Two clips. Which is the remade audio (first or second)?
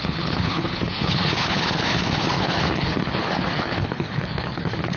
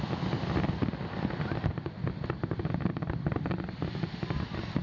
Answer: first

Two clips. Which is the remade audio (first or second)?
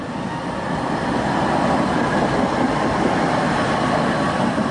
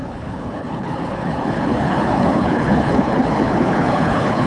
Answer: second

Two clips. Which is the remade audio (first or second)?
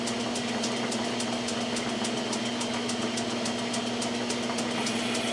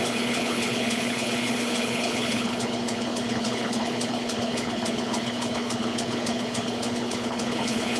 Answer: second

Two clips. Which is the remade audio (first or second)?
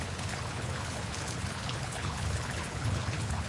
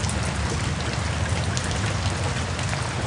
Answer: first